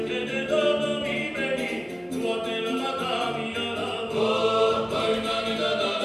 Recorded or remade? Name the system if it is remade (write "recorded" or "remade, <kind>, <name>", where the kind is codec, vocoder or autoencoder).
recorded